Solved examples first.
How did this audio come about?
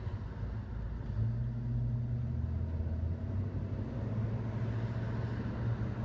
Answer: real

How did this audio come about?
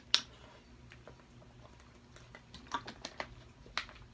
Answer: real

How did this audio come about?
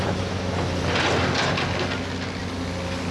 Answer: real